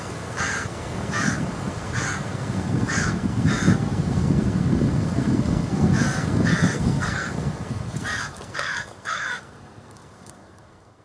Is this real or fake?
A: fake